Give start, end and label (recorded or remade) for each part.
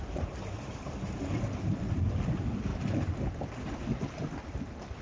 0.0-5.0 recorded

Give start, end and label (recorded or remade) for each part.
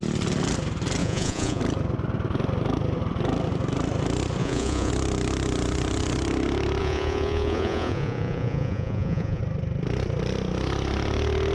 0.0-1.0 recorded; 1.0-1.6 remade; 1.6-4.4 recorded; 4.4-4.9 remade; 4.9-6.8 recorded; 6.8-9.4 remade; 9.4-11.5 recorded